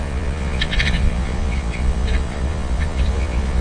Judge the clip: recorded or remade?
remade